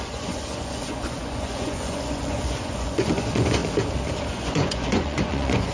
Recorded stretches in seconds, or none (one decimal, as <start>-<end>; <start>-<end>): 3.6-4.3

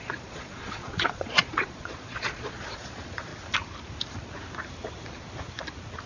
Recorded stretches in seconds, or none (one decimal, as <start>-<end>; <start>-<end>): 3.3-6.1

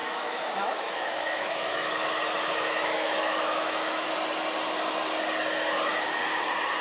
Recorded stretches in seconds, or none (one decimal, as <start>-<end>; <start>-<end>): 4.1-6.8

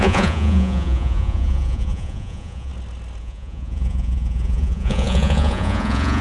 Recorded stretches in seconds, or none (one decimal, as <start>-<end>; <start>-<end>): 2.7-3.2

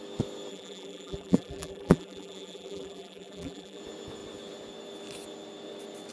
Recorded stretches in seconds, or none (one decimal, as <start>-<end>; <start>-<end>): 0.0-0.5; 3.8-6.1

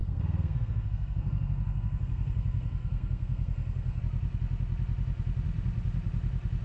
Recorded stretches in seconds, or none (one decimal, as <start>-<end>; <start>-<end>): 4.0-6.6

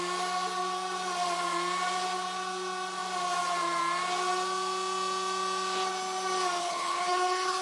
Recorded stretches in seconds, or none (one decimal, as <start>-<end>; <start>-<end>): 0.0-6.6